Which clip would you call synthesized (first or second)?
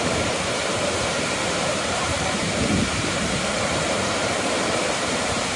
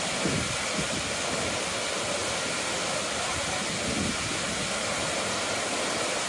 first